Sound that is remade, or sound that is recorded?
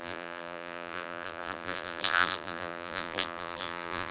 remade